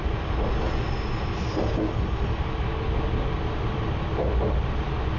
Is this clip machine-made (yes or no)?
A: no